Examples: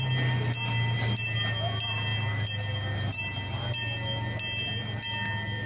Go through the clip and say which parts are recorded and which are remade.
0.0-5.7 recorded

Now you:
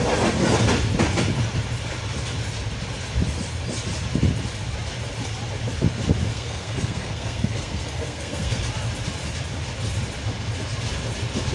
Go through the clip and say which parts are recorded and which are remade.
0.0-6.3 recorded; 6.3-8.7 remade; 8.7-11.5 recorded

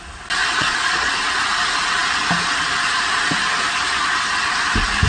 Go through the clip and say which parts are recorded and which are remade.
0.0-0.4 recorded; 0.4-1.1 remade; 1.1-5.1 recorded